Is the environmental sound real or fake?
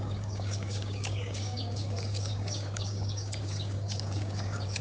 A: fake